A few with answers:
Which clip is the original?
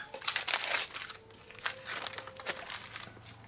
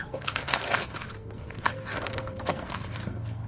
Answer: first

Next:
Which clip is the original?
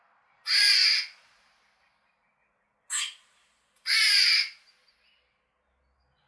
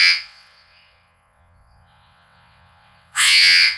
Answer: first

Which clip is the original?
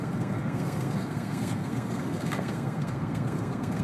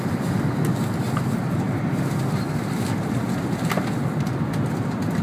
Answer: second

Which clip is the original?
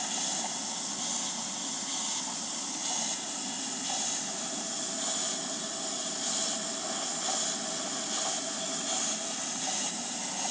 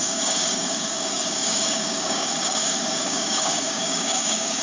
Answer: first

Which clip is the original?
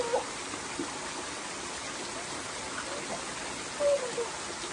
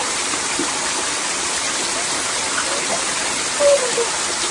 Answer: first